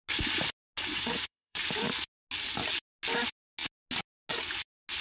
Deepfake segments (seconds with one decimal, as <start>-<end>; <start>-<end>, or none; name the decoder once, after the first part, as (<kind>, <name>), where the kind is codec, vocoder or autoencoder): 0.9-1.6 (vocoder, WaveNeXt)